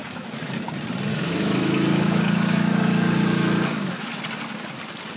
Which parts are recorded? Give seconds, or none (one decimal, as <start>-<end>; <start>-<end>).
0.7-1.1; 4.2-5.2